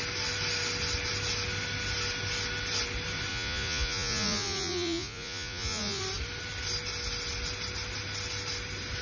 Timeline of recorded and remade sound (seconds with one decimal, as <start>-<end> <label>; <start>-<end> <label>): 0.0-3.3 recorded; 3.3-6.0 remade; 6.0-9.0 recorded